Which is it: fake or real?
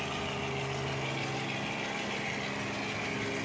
real